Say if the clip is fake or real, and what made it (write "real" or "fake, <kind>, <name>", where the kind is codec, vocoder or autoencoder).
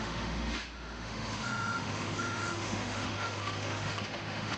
fake, autoencoder, DAC-VAE